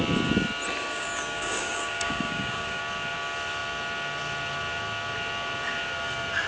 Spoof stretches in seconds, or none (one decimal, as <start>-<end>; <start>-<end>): 0.9-2.8